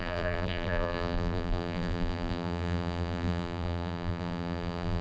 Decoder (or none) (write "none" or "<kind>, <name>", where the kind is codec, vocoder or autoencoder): vocoder, BigVGAN v2